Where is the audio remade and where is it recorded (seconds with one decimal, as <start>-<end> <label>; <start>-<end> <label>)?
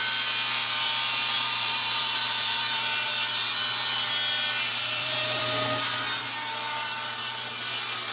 0.0-1.2 recorded; 1.2-3.5 remade; 3.5-4.7 recorded; 4.7-5.4 remade; 5.4-8.1 recorded